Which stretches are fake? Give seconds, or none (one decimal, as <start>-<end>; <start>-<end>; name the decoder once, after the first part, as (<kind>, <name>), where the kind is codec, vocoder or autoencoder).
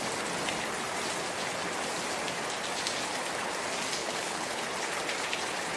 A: 4.0-4.6 (codec, HILCodec)